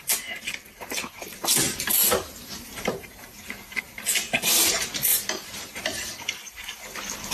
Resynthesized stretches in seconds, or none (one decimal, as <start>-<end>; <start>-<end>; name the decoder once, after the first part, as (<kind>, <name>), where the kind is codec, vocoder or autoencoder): 2.0-3.8 (vocoder, BigVGAN v2); 5.1-5.8